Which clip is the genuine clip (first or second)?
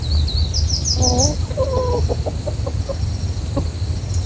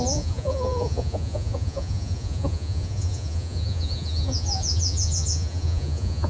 first